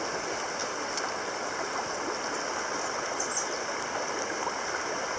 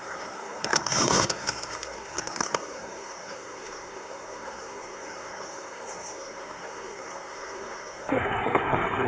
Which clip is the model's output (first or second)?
second